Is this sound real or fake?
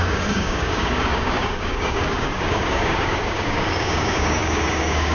fake